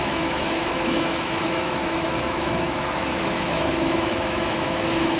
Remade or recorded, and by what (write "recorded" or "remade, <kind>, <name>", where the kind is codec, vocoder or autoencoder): remade, autoencoder, DAC-VAE